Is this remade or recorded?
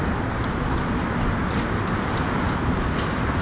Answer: recorded